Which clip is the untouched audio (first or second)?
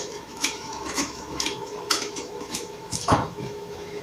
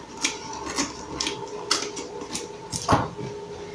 second